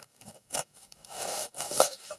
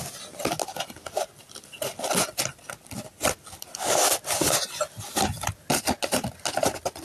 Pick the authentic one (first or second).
second